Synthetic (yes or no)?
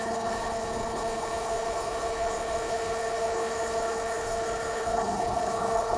yes